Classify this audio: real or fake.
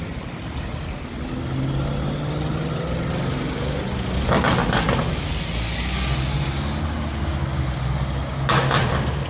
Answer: real